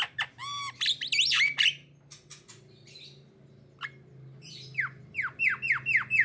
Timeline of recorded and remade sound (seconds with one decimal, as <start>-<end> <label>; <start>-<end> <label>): 0.0-6.2 recorded